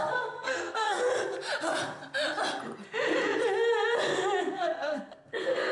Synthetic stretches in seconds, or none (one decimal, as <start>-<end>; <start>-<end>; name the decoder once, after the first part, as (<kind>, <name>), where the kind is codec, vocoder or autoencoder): 0.0-1.1 (codec, SNAC); 4.4-5.7